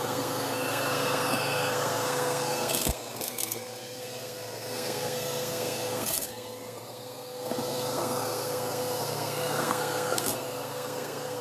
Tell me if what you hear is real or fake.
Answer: fake